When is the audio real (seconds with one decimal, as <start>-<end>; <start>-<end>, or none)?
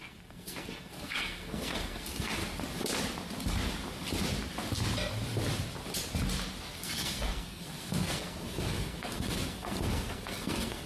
2.4-6.6